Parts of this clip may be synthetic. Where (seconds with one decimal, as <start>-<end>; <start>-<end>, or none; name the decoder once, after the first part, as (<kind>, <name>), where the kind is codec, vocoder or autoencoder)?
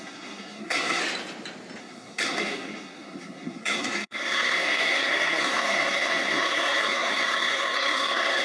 0.0-1.0 (codec, SNAC); 1.8-8.4